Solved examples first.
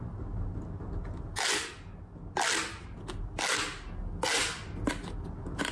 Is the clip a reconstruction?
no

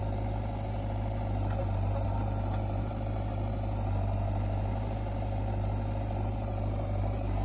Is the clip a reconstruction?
no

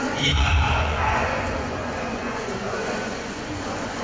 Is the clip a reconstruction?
yes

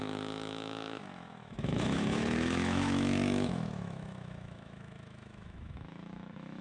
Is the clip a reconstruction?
yes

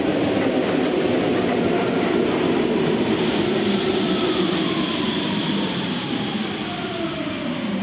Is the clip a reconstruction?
yes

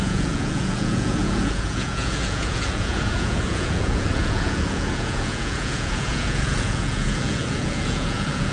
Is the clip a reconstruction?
yes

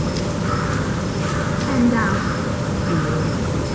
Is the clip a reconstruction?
no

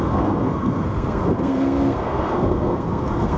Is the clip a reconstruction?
yes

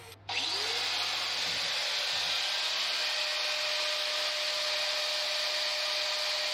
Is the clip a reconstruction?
no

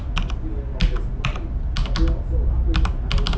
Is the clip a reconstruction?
no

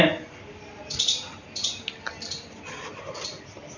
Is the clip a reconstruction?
no